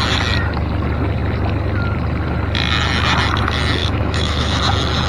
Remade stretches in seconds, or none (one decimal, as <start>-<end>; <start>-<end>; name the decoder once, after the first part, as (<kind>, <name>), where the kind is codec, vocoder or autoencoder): 3.8-4.6 (autoencoder, DAC-VAE)